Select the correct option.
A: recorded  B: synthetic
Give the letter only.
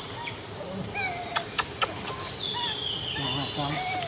A